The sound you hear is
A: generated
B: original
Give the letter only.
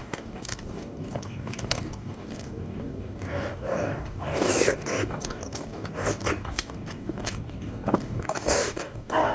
A